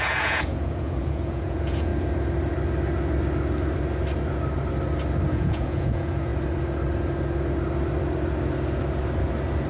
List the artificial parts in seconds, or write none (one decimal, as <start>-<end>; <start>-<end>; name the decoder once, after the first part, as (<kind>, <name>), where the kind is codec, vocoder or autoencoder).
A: 0.0-1.9 (vocoder, Vocos); 5.3-6.3